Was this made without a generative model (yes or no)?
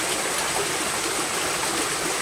yes